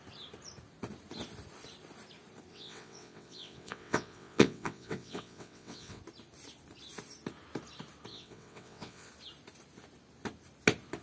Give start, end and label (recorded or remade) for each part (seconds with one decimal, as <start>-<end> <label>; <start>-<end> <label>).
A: 0.0-2.5 recorded; 2.5-6.0 remade; 6.0-8.1 recorded; 8.1-9.1 remade; 9.1-11.0 recorded